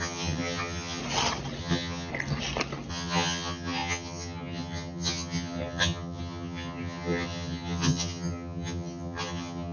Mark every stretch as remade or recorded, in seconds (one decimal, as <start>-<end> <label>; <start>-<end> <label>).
0.0-1.0 remade; 1.0-1.6 recorded; 1.6-2.1 remade; 2.1-2.9 recorded; 2.9-9.7 remade